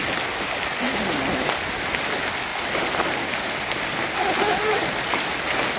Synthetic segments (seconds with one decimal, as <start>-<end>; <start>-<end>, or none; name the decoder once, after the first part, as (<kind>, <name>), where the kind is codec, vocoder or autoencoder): none